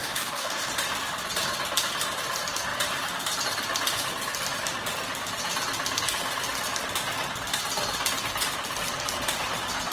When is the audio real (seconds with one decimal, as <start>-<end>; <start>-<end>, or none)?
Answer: 0.7-9.9